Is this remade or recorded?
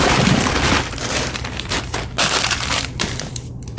remade